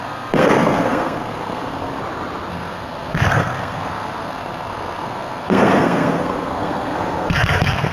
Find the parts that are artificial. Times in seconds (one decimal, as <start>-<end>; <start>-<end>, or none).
0.0-2.0; 2.5-7.9